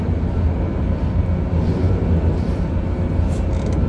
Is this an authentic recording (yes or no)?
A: yes